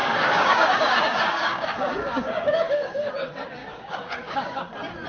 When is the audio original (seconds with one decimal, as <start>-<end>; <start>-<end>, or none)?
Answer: 3.1-3.6; 4.6-5.1